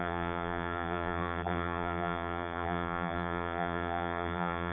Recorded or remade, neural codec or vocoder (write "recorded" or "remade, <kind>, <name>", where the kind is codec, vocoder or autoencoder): remade, vocoder, BigVGAN v2